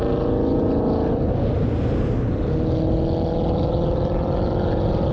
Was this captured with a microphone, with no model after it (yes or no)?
yes